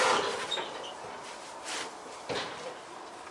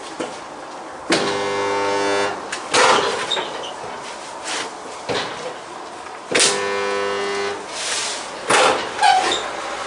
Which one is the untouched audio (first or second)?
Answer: second